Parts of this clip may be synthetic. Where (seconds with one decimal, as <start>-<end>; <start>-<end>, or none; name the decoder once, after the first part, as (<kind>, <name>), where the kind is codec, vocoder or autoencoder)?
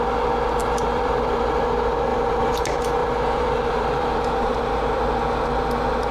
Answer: 0.6-1.6 (vocoder, BigVGAN v2); 2.1-2.6; 3.0-4.6